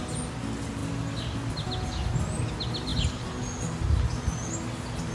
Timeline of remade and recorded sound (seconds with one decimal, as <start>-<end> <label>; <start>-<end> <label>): 0.0-5.1 recorded